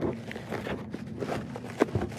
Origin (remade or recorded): recorded